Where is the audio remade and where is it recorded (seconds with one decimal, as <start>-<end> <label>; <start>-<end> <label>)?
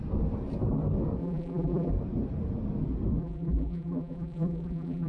0.0-1.2 recorded; 1.2-1.9 remade; 1.9-3.2 recorded; 3.2-5.1 remade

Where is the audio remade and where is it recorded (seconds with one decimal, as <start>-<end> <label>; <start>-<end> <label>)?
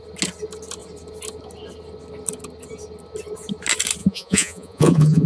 0.0-4.0 recorded; 4.0-5.3 remade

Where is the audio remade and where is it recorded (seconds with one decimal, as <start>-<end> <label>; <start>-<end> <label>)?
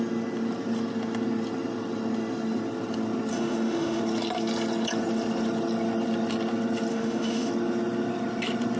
0.0-3.3 recorded; 3.3-4.0 remade; 4.0-6.9 recorded; 6.9-7.5 remade; 7.5-8.8 recorded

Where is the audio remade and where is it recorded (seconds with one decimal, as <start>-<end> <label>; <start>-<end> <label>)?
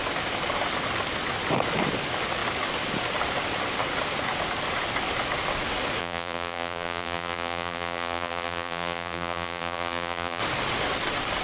0.0-6.0 recorded; 6.0-10.4 remade; 10.4-11.4 recorded